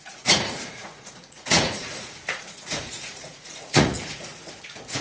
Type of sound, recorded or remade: remade